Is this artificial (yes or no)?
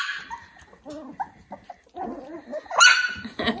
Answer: no